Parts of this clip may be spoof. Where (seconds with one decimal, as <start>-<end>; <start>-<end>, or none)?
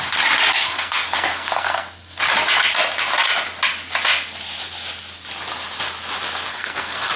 0.6-2.2; 6.5-7.2